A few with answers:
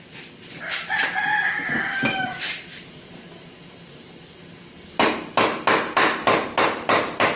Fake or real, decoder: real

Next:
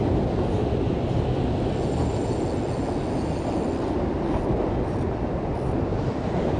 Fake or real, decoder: real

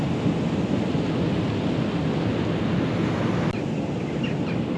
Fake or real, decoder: real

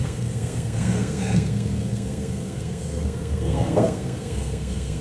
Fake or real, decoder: fake, codec, SNAC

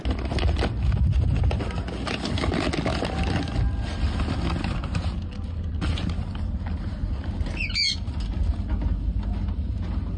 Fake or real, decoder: real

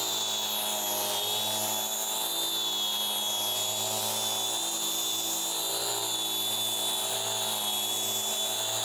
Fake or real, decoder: real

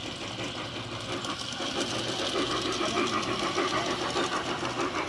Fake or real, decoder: real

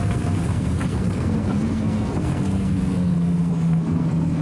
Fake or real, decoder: fake, codec, SNAC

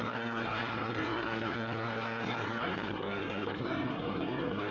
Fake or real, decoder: fake, codec, SNAC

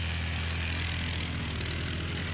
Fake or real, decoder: real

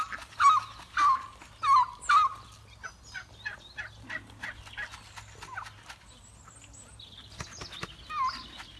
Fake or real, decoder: real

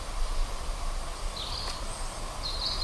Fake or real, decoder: real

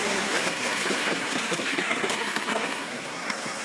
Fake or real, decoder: fake, codec, SNAC